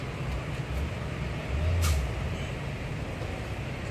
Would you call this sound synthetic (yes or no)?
no